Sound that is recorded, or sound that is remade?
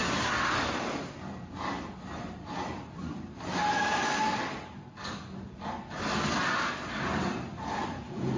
recorded